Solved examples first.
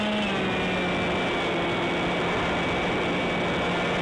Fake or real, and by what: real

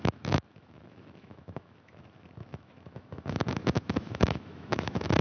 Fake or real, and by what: fake, autoencoder, DAC-VAE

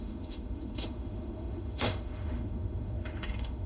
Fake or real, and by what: fake, autoencoder, DAC-VAE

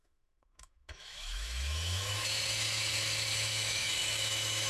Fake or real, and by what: fake, autoencoder, DAC-VAE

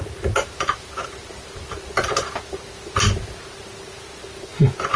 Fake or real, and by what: real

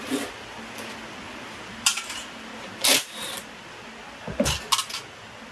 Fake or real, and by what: real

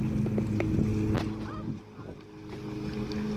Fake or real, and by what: real